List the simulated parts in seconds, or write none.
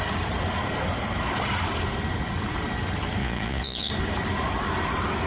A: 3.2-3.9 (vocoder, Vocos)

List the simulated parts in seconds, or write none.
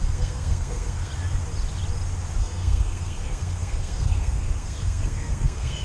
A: 0.0-1.1 (codec, SNAC); 2.4-5.8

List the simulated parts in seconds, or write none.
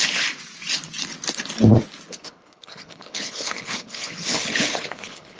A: 2.1-5.4 (codec, HILCodec)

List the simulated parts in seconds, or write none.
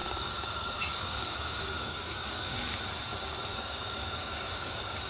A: 0.0-2.8 (codec, DAC); 3.5-5.1